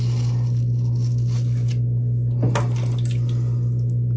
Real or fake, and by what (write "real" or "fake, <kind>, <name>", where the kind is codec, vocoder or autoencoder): real